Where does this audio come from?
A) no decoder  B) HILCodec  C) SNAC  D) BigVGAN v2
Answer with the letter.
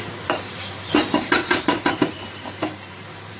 D